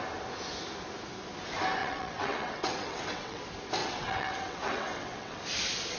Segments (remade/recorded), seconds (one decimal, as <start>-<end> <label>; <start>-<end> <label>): 0.0-1.8 recorded; 1.8-3.4 remade; 3.4-3.8 recorded; 3.8-5.4 remade; 5.4-6.0 recorded